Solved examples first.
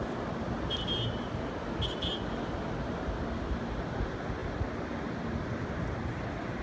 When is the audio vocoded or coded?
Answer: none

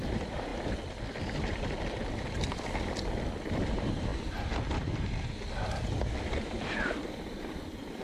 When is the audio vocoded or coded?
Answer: 0.0-0.5 (vocoder, BigVGAN v2); 3.5-4.1; 6.1-8.0

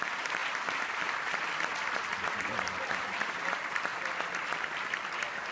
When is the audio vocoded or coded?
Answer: none

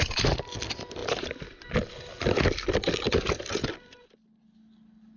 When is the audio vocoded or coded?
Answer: none